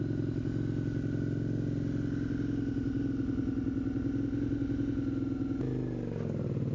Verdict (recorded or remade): recorded